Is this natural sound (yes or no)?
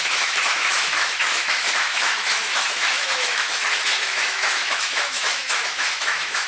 no